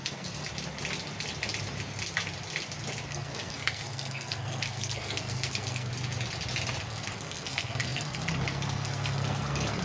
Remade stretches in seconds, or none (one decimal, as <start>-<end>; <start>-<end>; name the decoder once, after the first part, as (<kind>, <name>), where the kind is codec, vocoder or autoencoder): 0.0-0.4 (codec, SNAC); 3.1-5.9; 6.8-9.8